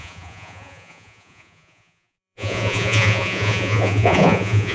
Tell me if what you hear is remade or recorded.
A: remade